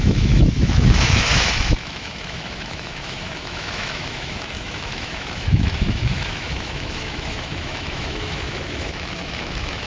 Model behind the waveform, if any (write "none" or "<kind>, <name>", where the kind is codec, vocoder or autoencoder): autoencoder, DAC-VAE